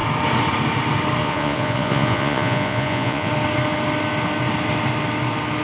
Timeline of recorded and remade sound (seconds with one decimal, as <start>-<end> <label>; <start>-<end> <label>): 0.0-1.2 recorded; 1.2-3.3 remade; 3.3-5.6 recorded